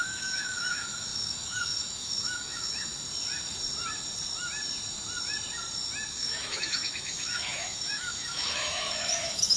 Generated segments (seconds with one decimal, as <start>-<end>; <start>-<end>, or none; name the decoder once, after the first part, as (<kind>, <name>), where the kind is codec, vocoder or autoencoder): 0.0-2.9 (autoencoder, DAC-VAE); 6.1-9.6